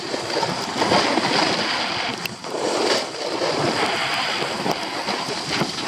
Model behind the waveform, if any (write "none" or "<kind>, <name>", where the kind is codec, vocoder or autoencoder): none